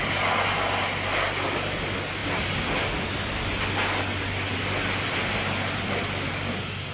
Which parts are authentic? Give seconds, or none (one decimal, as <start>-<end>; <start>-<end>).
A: 0.0-6.9